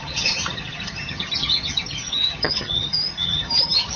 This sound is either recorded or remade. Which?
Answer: remade